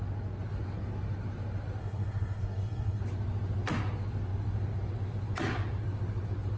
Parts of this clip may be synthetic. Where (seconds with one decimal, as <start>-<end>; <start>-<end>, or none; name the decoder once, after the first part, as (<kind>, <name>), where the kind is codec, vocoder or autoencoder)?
1.8-3.0 (codec, SNAC)